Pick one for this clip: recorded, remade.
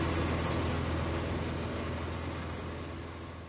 recorded